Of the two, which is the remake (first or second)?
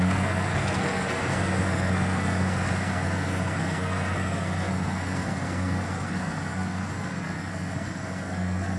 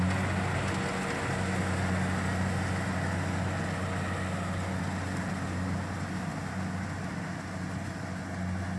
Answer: first